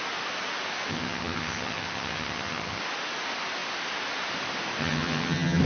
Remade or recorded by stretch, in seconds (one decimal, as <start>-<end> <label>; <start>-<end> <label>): 0.0-0.9 recorded; 0.9-2.8 remade; 2.8-4.8 recorded; 4.8-5.6 remade